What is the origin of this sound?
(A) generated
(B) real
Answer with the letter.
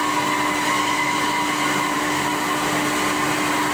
B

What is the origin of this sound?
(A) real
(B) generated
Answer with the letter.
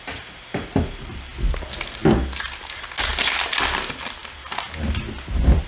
A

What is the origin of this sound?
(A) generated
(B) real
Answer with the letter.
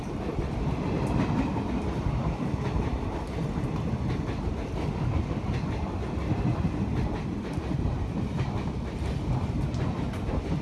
B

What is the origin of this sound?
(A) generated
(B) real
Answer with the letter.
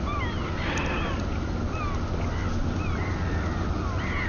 B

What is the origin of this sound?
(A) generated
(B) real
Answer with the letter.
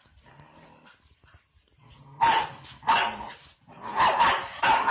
B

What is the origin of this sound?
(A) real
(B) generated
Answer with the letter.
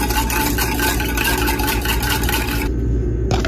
A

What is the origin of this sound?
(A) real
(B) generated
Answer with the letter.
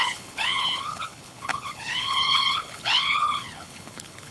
B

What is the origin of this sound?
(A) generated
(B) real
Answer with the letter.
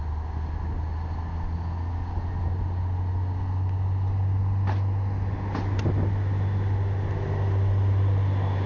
B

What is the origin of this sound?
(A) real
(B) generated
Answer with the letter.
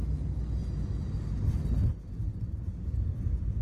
A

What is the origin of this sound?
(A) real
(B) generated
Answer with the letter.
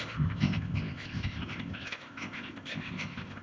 B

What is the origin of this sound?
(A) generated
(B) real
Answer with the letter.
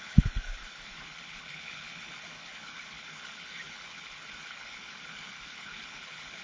A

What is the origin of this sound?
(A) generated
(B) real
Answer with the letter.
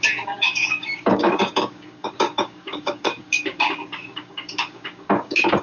A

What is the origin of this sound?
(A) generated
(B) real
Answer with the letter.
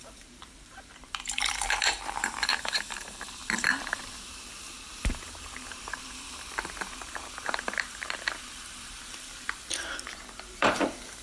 A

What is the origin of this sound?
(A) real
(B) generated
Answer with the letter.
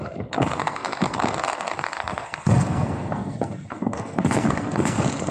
B